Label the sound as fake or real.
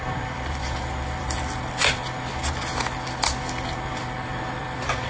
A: real